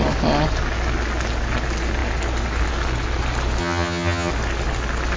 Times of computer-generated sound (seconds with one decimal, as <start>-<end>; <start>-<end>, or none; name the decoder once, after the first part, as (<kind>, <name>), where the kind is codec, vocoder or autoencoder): 3.6-4.3 (vocoder, HiFi-GAN)